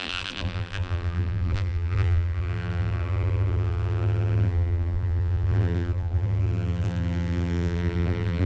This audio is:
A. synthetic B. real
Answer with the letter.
A